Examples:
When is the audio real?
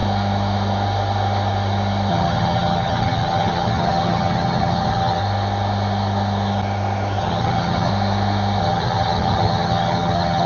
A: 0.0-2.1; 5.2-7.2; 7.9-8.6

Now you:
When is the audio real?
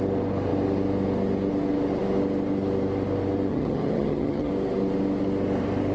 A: 0.0-3.5; 4.5-5.9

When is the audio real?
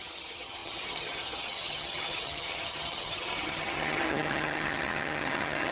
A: none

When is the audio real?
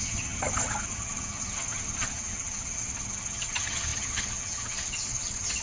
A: none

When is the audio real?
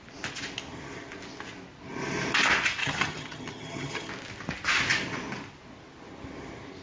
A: 0.0-2.8; 4.1-6.8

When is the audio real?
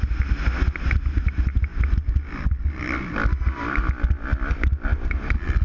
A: 0.0-5.6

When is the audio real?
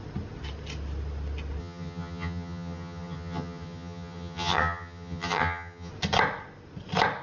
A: 0.0-1.6; 5.9-7.2